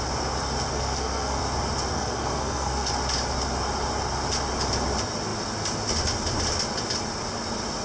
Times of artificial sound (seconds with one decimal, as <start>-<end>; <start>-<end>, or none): 0.7-1.4; 1.9-2.9